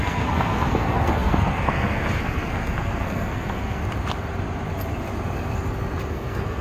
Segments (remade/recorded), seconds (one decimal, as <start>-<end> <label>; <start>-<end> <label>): 0.0-3.8 remade; 3.8-6.1 recorded; 6.1-6.6 remade